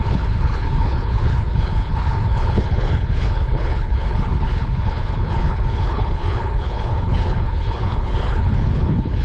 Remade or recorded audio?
remade